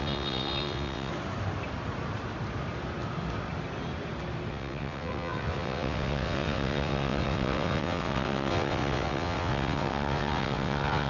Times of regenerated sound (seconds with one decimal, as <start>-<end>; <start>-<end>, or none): 0.0-1.1; 4.5-11.1